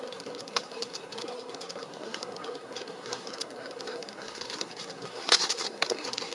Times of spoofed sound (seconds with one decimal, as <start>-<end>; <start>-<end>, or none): 0.0-6.3

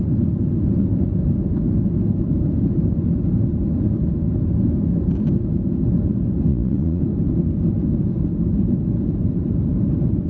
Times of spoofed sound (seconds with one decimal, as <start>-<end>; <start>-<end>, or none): 6.5-7.0

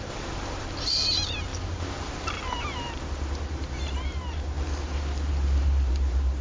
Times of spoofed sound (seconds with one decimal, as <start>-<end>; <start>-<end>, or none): 0.0-6.4

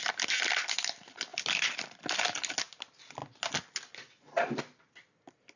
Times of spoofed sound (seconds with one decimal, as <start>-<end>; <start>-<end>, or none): none

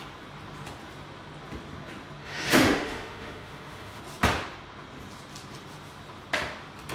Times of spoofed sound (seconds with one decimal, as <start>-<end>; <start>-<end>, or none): 2.2-4.0

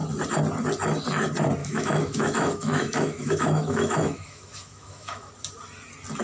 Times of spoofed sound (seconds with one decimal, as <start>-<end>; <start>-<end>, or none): 1.6-5.3

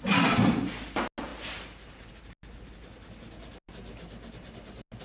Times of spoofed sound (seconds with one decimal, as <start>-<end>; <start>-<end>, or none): none

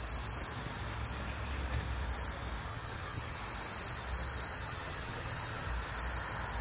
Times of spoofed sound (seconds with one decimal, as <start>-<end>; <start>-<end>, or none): 2.7-3.4; 4.5-5.7